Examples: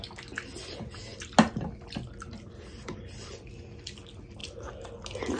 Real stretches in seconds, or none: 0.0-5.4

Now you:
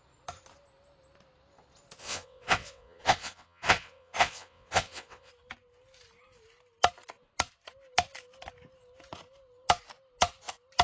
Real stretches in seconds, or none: 0.0-2.0; 5.3-10.8

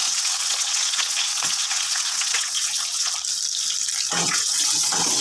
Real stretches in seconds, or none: 3.1-4.1

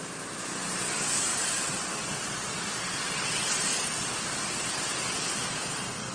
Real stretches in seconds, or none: 0.0-6.1

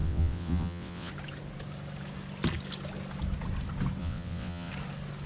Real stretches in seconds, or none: 1.1-4.0; 4.7-5.3

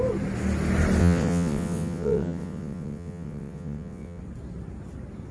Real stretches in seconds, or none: 0.0-1.0; 4.2-5.3

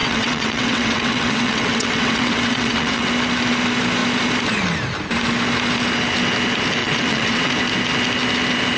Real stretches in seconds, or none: 3.1-6.8; 7.5-8.8